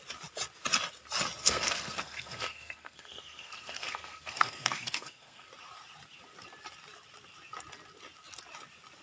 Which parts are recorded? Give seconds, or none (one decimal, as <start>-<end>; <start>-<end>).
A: 0.0-1.4; 5.5-9.0